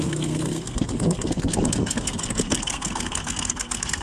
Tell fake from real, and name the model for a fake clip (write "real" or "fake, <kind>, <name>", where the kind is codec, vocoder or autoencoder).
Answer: fake, codec, SNAC